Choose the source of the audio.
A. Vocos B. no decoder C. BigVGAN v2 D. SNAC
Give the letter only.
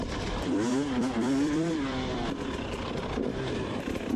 C